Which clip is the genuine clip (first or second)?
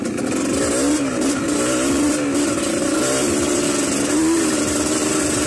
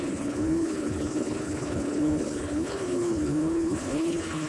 first